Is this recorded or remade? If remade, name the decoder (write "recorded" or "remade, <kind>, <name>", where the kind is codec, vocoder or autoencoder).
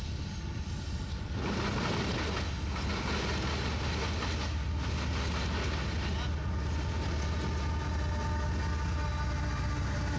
recorded